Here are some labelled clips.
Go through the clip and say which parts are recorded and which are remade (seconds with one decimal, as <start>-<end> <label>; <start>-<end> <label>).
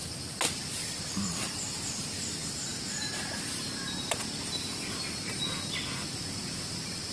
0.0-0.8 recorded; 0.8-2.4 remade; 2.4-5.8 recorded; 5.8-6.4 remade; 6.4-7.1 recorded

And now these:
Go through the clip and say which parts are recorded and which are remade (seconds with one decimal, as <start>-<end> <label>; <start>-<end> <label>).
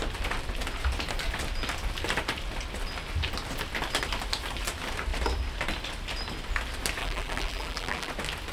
0.0-7.0 recorded; 7.0-8.1 remade; 8.1-8.5 recorded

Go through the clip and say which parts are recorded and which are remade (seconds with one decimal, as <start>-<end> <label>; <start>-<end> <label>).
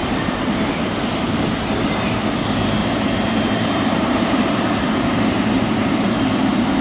0.0-0.7 remade; 0.7-2.8 recorded; 2.8-6.2 remade; 6.2-6.8 recorded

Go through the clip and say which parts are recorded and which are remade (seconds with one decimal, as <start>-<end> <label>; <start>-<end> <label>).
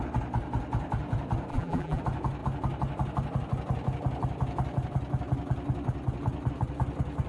0.0-1.5 recorded; 1.5-2.0 remade; 2.0-7.3 recorded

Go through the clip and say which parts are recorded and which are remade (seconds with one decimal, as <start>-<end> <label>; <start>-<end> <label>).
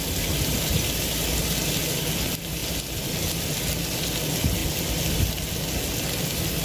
0.0-6.6 recorded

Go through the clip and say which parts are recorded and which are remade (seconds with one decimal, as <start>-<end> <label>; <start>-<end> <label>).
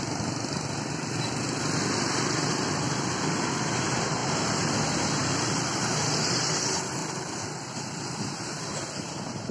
0.0-5.2 recorded; 5.2-5.8 remade; 5.8-7.0 recorded; 7.0-8.3 remade; 8.3-9.5 recorded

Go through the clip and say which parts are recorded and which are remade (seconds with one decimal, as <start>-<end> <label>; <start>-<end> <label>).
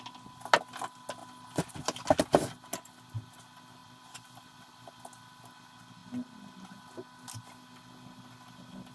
0.0-3.8 recorded; 3.8-5.0 remade; 5.0-8.9 recorded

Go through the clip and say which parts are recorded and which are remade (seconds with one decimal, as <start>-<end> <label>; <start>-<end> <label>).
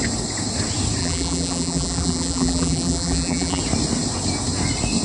0.0-1.0 recorded; 1.0-3.6 remade; 3.6-5.0 recorded